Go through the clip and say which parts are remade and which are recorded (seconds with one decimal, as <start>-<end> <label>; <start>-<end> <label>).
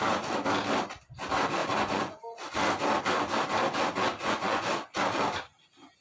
0.0-1.6 recorded; 1.6-2.2 remade; 2.2-4.2 recorded; 4.2-4.7 remade; 4.7-6.0 recorded